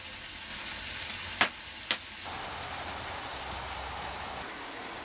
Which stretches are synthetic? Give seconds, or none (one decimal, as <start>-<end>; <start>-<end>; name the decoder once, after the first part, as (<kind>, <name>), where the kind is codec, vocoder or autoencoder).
none